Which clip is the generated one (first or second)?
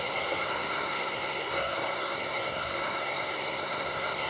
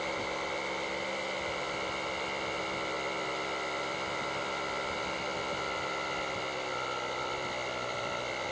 first